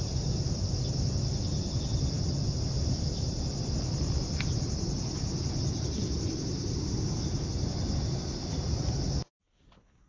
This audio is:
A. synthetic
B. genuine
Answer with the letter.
A